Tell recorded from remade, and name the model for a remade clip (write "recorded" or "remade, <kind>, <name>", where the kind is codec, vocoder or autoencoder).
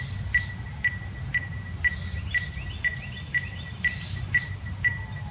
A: recorded